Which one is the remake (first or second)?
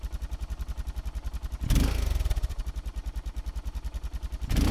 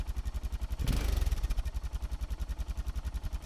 second